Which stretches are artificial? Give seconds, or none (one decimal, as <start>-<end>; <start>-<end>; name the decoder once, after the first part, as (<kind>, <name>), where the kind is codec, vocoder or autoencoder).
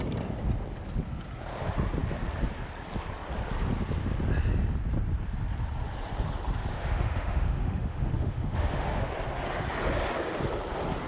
6.7-9.1 (autoencoder, DAC-VAE)